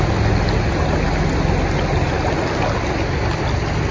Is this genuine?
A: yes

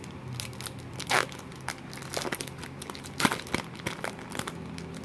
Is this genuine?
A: yes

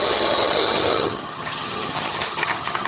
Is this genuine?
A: no